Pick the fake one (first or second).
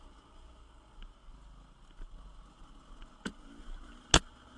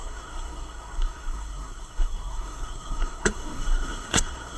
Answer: second